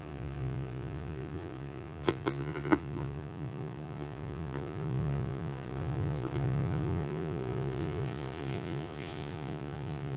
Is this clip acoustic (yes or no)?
no